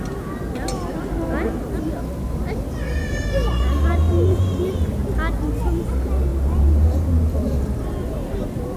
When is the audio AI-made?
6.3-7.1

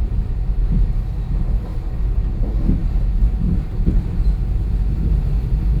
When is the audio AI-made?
0.0-0.6; 1.7-2.3

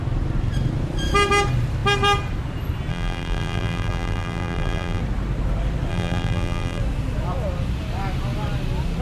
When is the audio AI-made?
2.9-5.0; 5.9-6.8

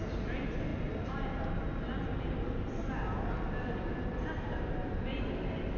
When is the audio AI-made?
none